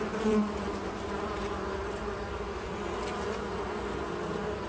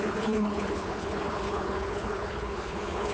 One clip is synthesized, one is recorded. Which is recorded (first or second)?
first